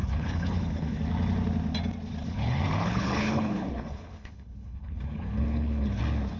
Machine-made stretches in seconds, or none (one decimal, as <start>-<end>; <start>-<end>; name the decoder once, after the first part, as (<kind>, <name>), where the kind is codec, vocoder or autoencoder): 0.0-1.0 (codec, HILCodec); 2.2-6.0